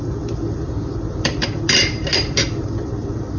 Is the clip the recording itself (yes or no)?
no